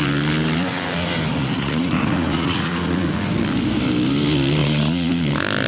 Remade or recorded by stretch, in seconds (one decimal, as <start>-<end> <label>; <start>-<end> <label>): 0.0-1.3 recorded; 1.3-3.1 remade; 3.1-4.6 recorded; 4.6-5.1 remade; 5.1-5.7 recorded